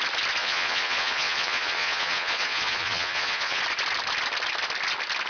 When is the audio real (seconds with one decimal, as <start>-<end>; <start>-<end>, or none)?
0.0-0.4; 3.6-5.3